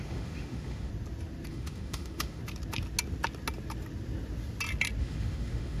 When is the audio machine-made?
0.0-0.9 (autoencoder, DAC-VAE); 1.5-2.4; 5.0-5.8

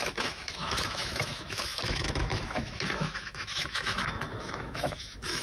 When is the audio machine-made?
0.0-5.4 (autoencoder, DAC-VAE)